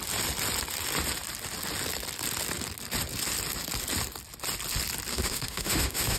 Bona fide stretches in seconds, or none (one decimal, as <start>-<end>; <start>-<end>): 0.0-5.1